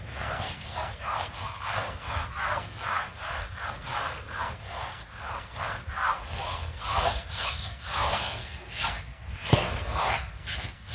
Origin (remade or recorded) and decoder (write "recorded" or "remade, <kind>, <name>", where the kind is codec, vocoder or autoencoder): remade, codec, SNAC